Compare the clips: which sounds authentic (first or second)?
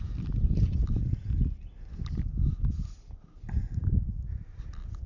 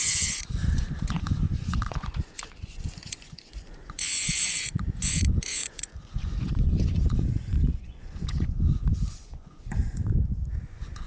first